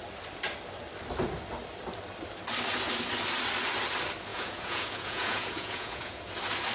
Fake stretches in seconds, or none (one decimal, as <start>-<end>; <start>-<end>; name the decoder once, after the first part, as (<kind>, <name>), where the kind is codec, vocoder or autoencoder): 4.3-6.3 (vocoder, Vocos)